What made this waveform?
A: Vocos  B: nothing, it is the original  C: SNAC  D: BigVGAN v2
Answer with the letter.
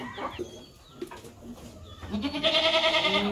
B